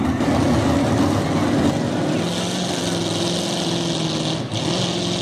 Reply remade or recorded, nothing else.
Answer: recorded